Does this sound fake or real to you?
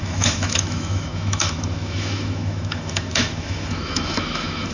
fake